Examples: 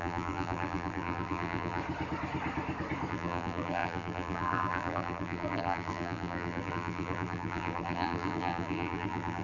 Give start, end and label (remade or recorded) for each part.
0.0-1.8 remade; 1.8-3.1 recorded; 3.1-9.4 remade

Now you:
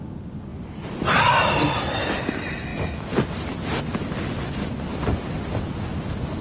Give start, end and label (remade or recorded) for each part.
0.0-0.5 recorded; 0.5-2.3 remade; 2.3-4.9 recorded; 4.9-5.6 remade; 5.6-6.4 recorded

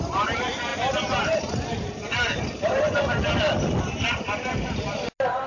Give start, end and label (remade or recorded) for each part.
0.0-5.5 recorded

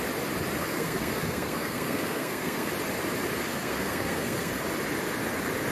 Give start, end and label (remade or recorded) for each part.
0.0-0.6 recorded; 0.6-2.7 remade; 2.7-3.5 recorded; 3.5-4.5 remade; 4.5-5.7 recorded

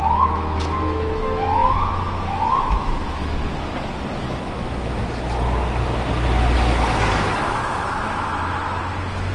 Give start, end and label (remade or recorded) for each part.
0.0-3.5 remade; 3.5-4.2 recorded; 4.2-5.0 remade; 5.0-7.6 recorded; 7.6-9.3 remade

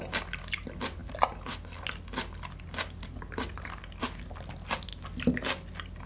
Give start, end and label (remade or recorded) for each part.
0.0-6.1 recorded